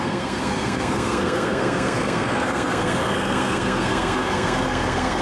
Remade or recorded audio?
remade